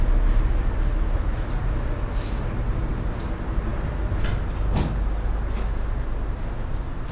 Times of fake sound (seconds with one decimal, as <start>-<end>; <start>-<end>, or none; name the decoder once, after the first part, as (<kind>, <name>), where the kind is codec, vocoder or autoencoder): none